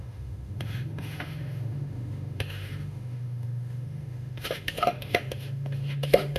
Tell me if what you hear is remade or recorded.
remade